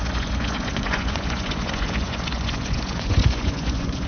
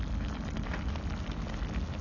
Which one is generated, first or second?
first